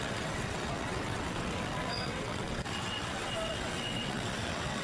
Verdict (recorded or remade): remade